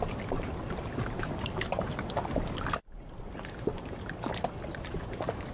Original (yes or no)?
yes